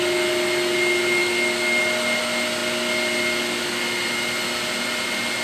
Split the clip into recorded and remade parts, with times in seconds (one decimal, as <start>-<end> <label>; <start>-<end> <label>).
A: 0.0-5.4 recorded